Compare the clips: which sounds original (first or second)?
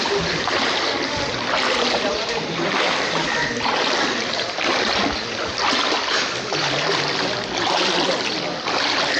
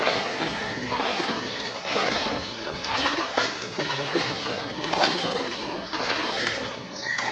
first